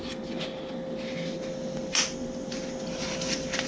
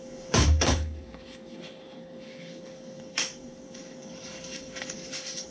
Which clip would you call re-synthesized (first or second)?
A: second